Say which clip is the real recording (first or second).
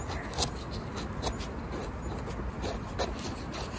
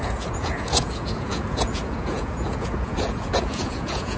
first